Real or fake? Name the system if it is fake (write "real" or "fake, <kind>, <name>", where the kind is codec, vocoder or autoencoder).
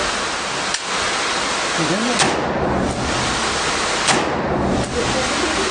real